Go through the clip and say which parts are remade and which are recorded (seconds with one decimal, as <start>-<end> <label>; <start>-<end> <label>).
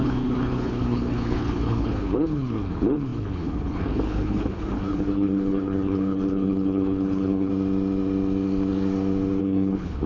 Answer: 0.0-7.5 remade; 7.5-9.4 recorded; 9.4-10.1 remade